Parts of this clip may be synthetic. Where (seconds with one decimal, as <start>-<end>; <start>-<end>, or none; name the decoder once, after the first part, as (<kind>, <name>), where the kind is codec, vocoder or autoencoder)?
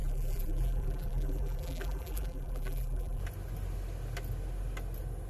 0.0-3.2 (vocoder, BigVGAN v2)